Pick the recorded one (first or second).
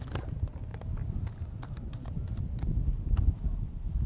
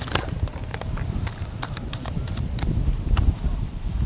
first